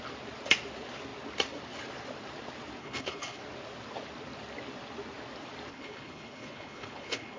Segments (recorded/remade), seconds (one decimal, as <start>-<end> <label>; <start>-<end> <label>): 0.0-2.8 recorded; 2.8-3.4 remade; 3.4-5.7 recorded; 5.7-7.4 remade